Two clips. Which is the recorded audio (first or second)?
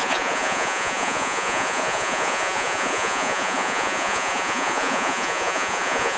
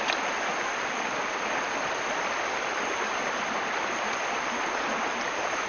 second